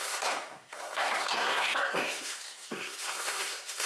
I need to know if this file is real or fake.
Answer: fake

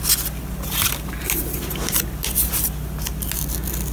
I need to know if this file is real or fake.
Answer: real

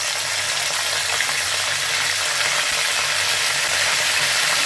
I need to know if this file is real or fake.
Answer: real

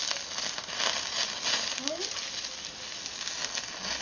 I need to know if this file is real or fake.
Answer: real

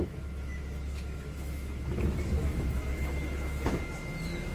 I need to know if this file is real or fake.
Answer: fake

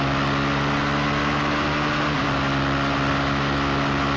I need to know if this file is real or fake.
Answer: real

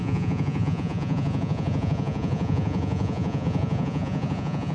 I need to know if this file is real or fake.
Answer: fake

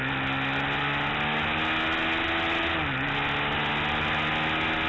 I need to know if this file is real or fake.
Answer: real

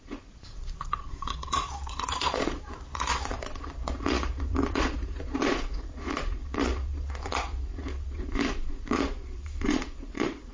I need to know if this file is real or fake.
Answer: fake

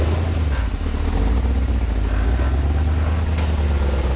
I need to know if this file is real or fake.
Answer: real